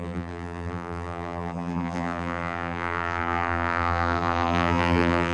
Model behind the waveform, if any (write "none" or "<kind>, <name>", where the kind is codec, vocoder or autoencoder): vocoder, BigVGAN v2